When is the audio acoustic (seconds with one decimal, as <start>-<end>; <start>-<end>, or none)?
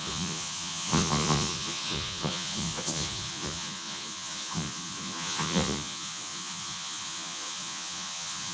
none